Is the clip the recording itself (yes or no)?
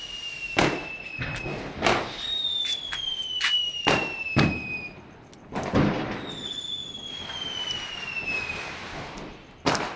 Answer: yes